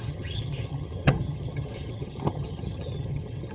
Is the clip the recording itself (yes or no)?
no